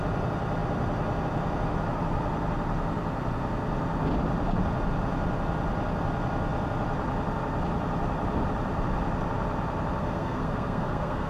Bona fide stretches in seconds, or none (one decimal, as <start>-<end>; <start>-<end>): 0.0-10.0